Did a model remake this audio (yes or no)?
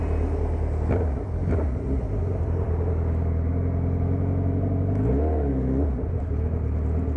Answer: no